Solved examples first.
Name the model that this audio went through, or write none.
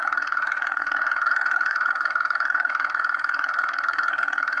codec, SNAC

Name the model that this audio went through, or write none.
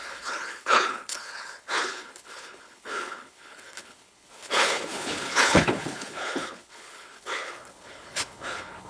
codec, HILCodec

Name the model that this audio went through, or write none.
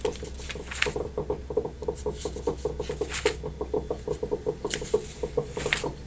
none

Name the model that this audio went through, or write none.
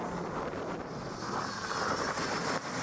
none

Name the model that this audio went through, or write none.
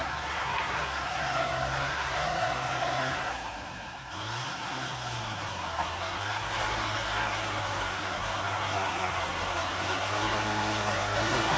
codec, SNAC